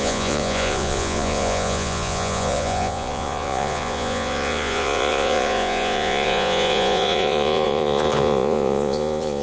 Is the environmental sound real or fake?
fake